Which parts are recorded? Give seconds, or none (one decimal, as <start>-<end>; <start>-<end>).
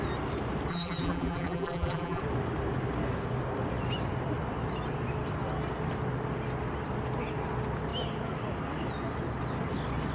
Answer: 0.0-0.7; 2.2-10.1